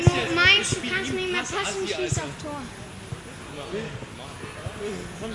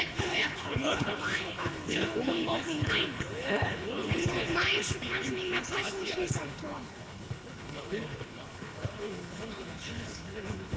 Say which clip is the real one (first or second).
first